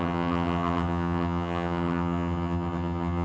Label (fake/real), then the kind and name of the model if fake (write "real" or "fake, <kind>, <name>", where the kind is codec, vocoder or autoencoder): fake, vocoder, HiFi-GAN